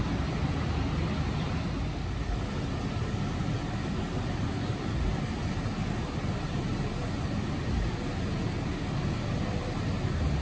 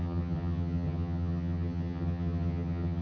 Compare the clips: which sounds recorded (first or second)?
first